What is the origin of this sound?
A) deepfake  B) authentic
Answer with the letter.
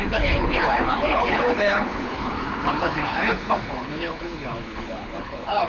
A